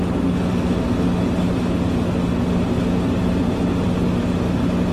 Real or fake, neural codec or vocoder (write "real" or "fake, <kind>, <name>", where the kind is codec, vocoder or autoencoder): real